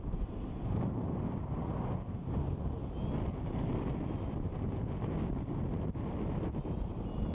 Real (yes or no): yes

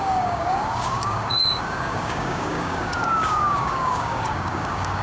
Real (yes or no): no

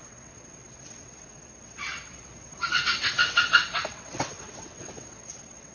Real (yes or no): no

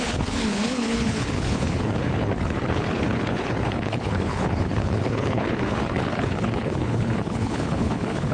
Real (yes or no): no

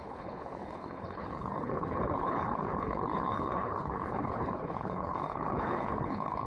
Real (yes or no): no